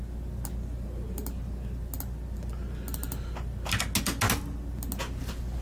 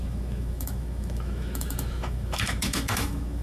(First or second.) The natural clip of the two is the first